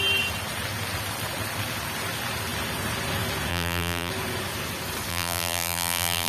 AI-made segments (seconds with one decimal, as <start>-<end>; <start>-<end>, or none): 3.5-4.1; 5.1-6.3